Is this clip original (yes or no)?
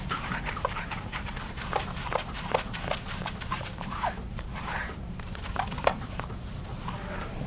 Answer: no